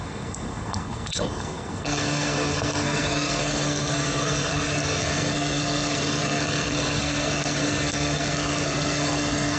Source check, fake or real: fake